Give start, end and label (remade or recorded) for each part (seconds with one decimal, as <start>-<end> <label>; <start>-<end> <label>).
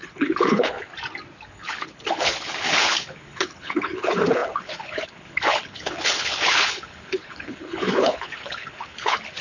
0.0-0.9 remade; 0.9-1.5 recorded; 1.5-9.4 remade